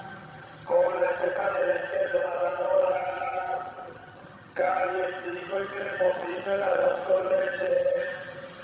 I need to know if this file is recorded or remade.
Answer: remade